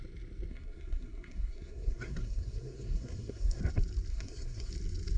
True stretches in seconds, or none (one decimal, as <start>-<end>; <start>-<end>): 0.0-0.5; 3.6-4.1; 4.7-5.2